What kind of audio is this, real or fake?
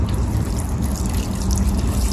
fake